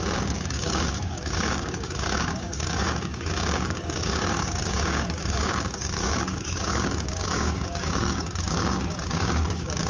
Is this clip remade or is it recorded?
remade